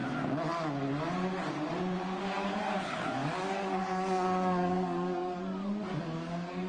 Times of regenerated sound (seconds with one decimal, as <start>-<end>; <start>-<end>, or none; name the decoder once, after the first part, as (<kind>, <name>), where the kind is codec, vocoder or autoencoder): 2.2-6.7 (codec, DAC)